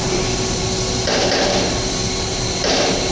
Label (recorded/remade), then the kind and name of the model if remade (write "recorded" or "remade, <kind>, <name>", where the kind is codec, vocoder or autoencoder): recorded